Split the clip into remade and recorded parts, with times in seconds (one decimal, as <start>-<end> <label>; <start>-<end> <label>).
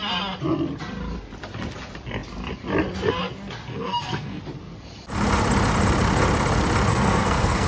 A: 0.0-3.7 recorded; 3.7-4.4 remade; 4.4-6.9 recorded; 6.9-7.7 remade